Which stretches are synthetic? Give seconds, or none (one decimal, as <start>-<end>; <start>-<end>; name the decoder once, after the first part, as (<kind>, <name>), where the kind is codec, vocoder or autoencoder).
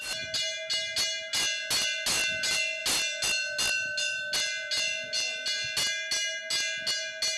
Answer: none